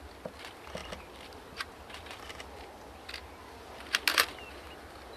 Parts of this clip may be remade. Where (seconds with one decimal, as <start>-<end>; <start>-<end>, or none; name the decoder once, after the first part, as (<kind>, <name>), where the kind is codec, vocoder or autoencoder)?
none